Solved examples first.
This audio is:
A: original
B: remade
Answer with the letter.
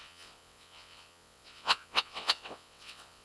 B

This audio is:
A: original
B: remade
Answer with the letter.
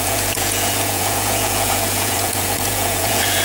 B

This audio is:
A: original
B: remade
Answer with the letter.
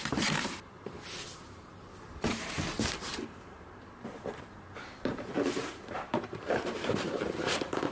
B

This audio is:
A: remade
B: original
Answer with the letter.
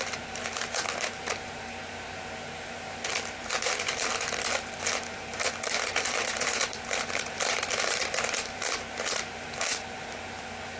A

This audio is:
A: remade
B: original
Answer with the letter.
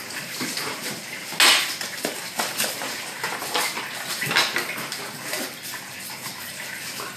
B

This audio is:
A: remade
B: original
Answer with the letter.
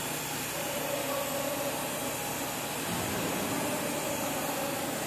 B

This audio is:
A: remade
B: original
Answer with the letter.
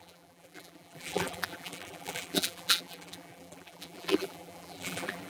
A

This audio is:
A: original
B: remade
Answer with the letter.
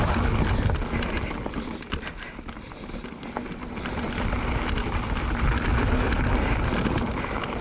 A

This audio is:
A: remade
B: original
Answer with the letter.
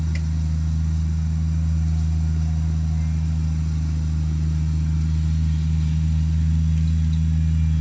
B